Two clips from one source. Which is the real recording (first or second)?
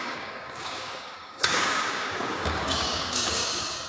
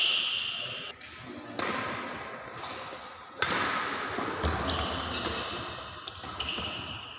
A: second